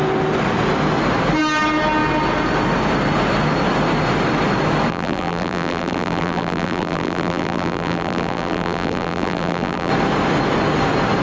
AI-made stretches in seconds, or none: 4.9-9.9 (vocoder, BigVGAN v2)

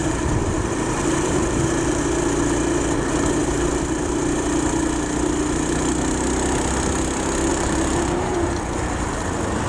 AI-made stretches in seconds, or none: 0.0-2.0 (vocoder, BigVGAN v2); 3.4-4.1; 7.5-8.5